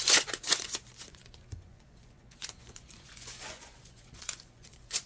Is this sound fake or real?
fake